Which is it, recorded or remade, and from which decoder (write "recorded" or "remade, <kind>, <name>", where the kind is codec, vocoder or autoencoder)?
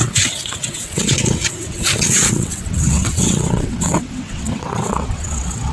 remade, vocoder, WaveNeXt